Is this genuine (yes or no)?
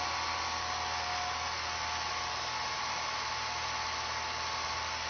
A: yes